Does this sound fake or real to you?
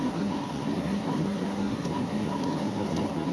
fake